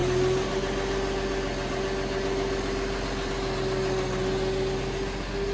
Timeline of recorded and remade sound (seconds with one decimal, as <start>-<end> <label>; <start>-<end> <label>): 0.0-5.5 recorded